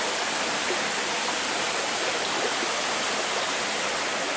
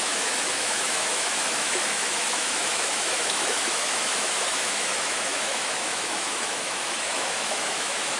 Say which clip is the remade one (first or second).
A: second